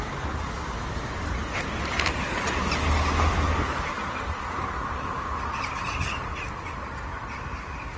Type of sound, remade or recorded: recorded